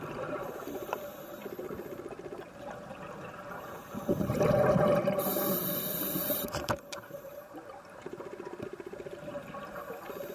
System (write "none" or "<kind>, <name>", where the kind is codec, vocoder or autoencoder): vocoder, BigVGAN v2